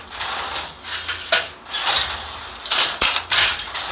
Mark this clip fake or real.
real